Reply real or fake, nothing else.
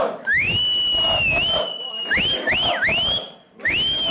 real